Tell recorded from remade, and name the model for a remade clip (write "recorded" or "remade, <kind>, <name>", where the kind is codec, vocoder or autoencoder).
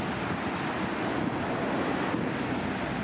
recorded